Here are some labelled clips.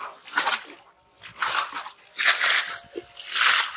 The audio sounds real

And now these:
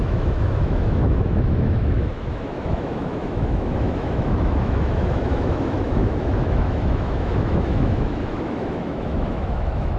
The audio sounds fake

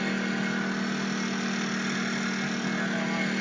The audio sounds real